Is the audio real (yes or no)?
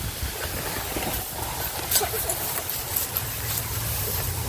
yes